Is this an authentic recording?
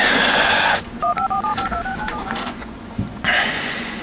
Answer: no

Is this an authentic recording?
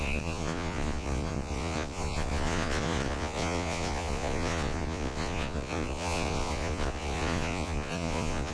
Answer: no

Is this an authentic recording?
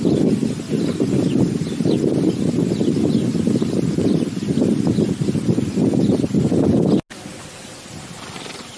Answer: yes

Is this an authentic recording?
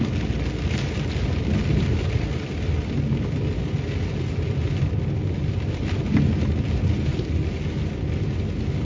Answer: yes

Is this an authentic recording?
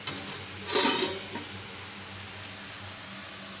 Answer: yes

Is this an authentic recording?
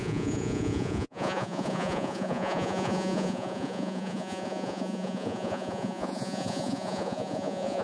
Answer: no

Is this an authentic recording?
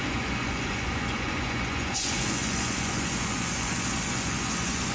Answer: no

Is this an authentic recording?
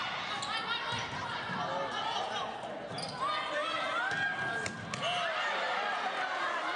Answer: yes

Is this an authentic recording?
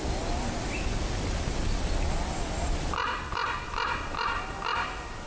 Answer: yes